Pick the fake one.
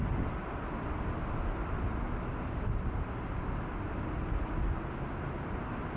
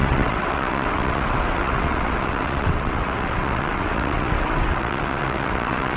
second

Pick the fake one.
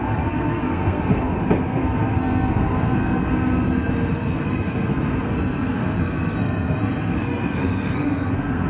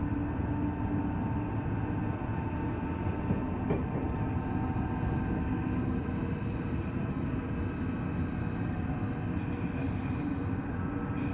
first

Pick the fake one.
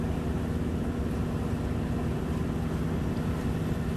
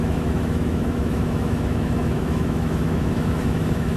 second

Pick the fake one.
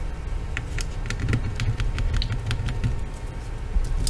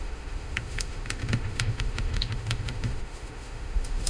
second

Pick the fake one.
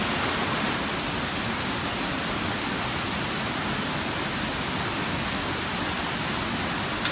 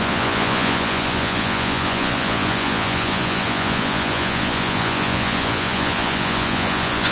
second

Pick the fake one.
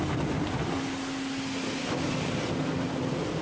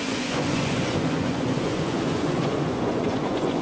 second